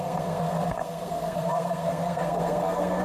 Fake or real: fake